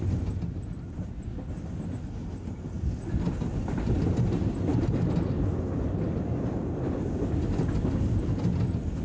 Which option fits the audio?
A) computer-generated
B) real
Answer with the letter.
B